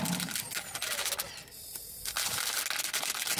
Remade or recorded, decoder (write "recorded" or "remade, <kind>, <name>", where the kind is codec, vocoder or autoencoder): recorded